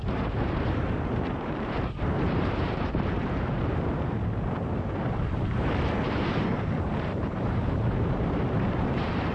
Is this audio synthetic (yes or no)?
yes